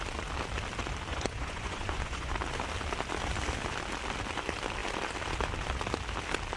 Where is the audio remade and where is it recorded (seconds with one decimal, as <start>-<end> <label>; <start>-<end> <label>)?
0.0-1.1 recorded; 1.1-2.3 remade; 2.3-6.6 recorded